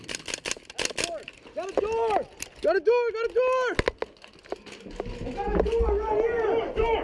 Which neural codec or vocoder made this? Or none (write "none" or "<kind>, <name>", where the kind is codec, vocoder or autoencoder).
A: none